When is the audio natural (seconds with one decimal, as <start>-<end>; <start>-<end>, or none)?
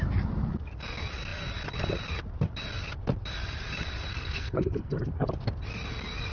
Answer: 0.0-4.1; 5.0-6.3